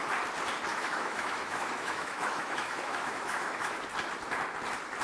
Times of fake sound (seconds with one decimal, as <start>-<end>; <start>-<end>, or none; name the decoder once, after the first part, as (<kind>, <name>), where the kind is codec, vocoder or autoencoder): 0.7-3.7 (autoencoder, DAC-VAE)